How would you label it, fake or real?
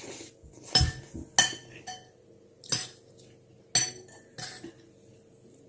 real